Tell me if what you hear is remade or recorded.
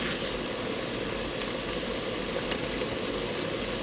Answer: recorded